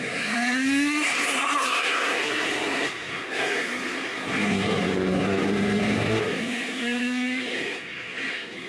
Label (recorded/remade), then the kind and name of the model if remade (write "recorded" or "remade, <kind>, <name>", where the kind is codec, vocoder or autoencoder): remade, codec, SNAC